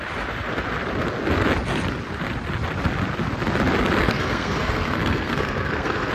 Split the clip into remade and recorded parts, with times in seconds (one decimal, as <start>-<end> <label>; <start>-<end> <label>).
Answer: 0.0-4.0 recorded; 4.0-6.1 remade